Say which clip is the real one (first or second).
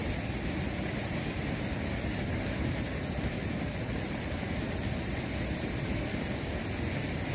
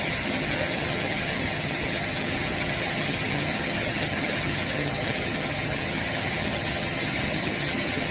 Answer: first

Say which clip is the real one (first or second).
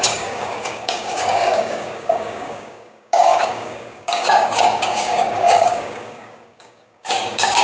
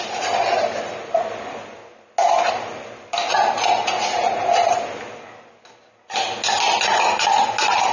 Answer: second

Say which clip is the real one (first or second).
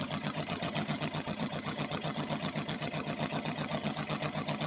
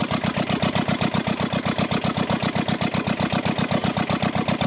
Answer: second